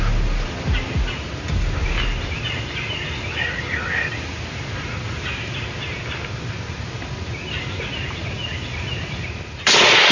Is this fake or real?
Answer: real